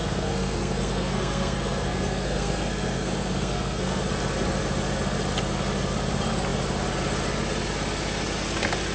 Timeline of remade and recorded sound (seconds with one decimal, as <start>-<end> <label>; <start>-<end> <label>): 0.0-4.0 remade; 4.0-8.9 recorded